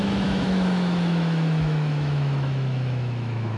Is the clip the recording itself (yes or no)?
no